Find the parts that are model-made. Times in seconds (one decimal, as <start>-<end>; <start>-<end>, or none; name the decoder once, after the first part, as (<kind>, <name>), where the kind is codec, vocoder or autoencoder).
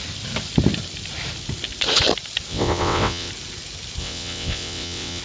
2.5-3.3 (vocoder, WaveNeXt); 4.0-5.2